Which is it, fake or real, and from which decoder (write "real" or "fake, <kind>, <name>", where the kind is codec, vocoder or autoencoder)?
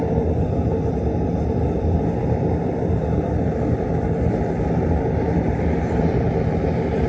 real